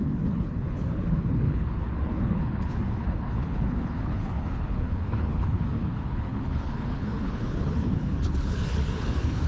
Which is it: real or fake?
fake